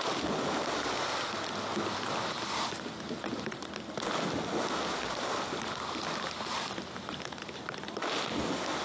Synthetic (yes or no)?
no